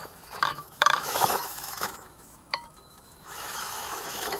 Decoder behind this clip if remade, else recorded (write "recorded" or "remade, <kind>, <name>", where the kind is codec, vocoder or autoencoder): remade, autoencoder, DAC-VAE